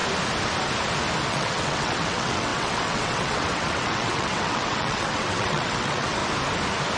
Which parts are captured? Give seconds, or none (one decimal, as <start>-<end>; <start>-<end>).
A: 0.0-1.3; 6.2-7.0